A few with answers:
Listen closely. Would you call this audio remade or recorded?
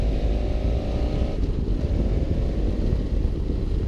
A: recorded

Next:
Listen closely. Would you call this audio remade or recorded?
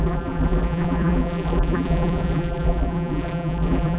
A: remade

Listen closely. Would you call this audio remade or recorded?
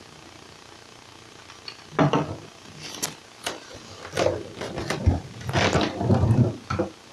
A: recorded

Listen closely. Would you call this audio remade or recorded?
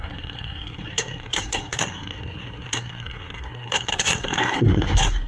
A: remade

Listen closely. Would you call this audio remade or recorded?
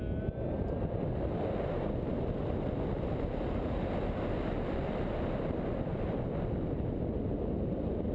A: recorded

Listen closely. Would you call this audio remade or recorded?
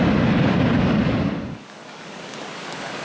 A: remade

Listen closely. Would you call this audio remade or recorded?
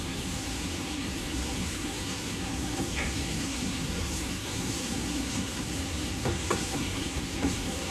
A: remade